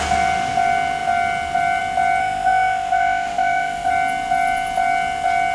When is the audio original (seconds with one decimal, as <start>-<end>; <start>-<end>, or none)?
0.0-2.2; 3.9-5.5